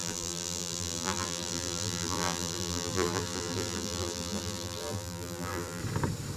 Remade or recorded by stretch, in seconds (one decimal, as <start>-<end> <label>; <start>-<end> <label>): 0.0-5.8 remade; 5.8-6.4 recorded